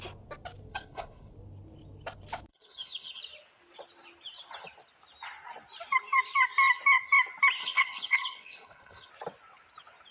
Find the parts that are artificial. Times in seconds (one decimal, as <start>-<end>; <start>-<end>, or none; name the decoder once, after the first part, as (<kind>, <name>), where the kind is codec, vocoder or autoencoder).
0.7-1.3 (codec, HILCodec); 2.5-3.2; 7.6-9.1